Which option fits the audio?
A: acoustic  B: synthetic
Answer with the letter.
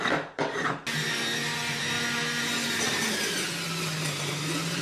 A